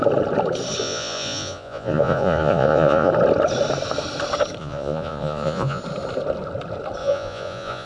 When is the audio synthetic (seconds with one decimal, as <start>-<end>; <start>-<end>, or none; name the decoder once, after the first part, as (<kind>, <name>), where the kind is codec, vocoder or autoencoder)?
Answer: 0.8-3.1 (vocoder, Vocos); 4.6-5.8; 7.0-7.9